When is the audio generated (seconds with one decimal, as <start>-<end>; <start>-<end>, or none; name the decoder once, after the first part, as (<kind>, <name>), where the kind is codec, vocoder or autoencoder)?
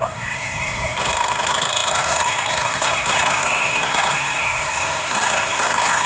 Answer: 0.0-6.1 (codec, SNAC)